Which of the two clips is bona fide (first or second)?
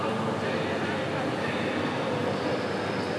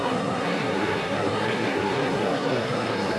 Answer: first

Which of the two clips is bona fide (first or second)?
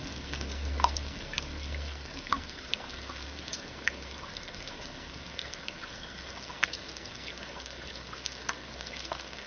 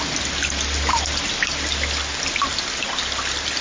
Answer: second